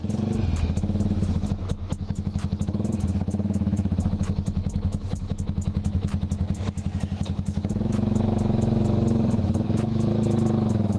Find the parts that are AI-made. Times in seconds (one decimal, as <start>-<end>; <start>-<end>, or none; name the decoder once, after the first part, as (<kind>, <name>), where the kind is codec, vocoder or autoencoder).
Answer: 0.6-6.1 (autoencoder, DAC-VAE); 7.0-11.0